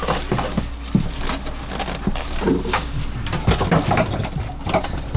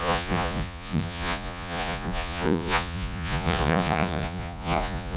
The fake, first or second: second